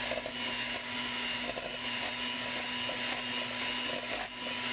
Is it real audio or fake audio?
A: real